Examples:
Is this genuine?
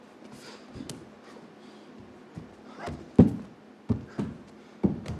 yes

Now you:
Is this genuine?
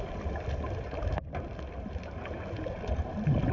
yes